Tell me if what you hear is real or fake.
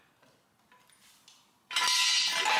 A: real